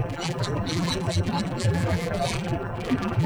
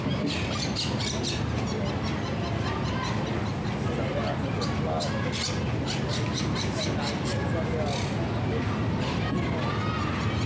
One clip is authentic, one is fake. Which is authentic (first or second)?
second